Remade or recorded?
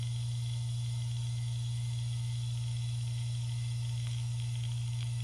remade